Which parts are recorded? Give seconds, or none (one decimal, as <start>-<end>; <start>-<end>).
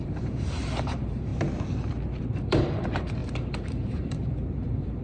1.3-2.2